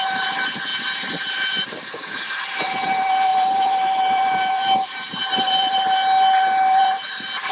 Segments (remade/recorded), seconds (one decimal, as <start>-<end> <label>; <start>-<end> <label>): 0.0-7.5 remade